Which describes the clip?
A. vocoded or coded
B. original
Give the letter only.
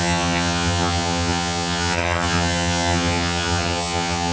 A